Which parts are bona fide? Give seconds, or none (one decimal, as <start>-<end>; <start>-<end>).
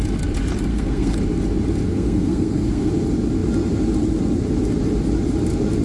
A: 0.0-0.7; 1.2-1.9; 2.9-5.8